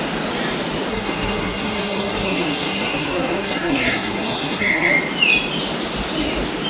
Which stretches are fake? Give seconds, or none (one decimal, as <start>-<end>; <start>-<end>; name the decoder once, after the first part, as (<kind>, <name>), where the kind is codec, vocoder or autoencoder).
0.9-4.9 (codec, SNAC)